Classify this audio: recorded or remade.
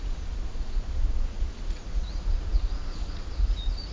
remade